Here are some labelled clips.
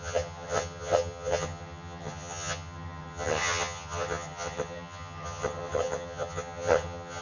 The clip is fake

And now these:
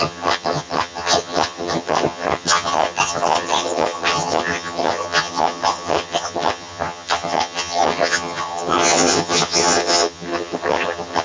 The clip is fake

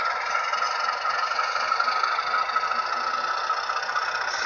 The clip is real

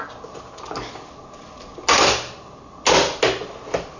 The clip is real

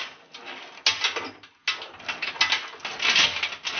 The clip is real